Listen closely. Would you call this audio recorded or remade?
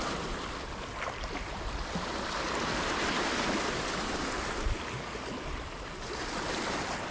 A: recorded